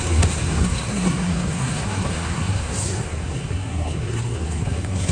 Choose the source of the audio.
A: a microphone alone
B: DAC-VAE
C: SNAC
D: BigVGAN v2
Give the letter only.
C